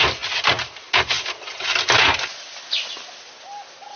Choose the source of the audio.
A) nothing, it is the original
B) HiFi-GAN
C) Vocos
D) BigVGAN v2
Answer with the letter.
A